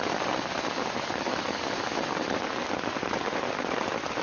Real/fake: real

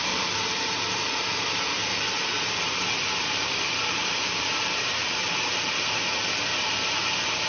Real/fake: fake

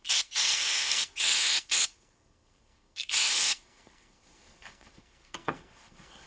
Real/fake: fake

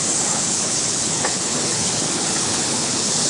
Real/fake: fake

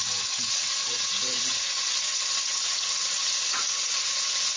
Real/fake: fake